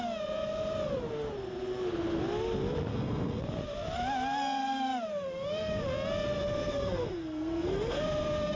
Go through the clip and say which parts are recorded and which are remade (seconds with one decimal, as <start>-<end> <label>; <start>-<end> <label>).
0.0-2.9 recorded; 2.9-3.4 remade; 3.4-5.1 recorded; 5.1-5.8 remade; 5.8-6.4 recorded; 6.4-8.6 remade